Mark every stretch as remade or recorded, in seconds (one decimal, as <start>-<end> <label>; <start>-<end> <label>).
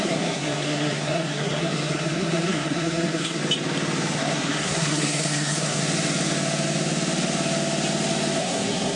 0.0-3.4 remade; 3.4-4.2 recorded; 4.2-5.8 remade; 5.8-8.4 recorded; 8.4-9.0 remade